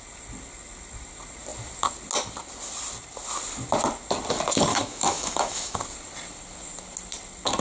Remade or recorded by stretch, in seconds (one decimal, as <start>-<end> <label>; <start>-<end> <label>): 0.0-4.7 recorded; 4.7-5.8 remade; 5.8-7.6 recorded